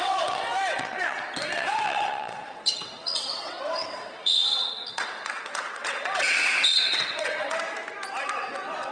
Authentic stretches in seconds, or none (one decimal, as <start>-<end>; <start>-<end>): 7.6-8.2